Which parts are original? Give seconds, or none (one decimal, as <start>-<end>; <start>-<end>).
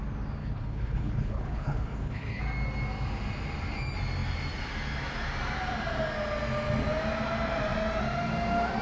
0.0-0.4; 2.4-8.8